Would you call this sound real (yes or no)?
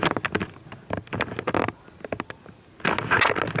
yes